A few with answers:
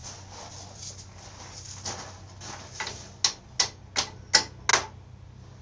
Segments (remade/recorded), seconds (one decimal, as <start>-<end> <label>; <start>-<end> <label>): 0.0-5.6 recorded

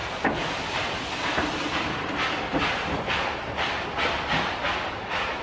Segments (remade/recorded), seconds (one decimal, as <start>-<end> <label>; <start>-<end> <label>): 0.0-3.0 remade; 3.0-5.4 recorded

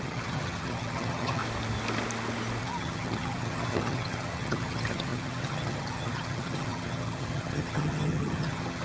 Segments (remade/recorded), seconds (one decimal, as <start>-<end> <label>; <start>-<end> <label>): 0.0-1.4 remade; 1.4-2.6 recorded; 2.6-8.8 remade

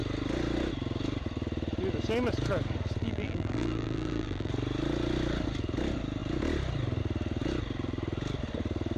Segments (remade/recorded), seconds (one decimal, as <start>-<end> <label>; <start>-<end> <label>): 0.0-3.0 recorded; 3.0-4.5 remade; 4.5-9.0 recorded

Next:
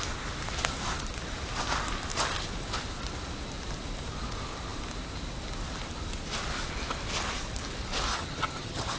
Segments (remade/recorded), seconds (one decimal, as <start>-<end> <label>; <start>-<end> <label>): 0.0-8.1 recorded; 8.1-9.0 remade